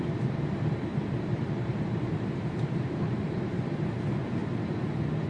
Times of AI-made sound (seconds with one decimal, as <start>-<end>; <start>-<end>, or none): 0.9-4.0